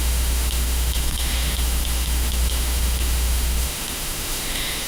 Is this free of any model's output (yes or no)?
no